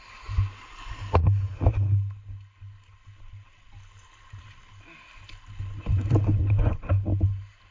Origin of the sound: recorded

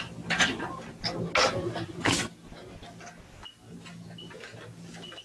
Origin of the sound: recorded